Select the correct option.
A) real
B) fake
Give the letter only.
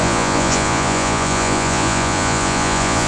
B